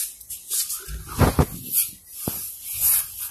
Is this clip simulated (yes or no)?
no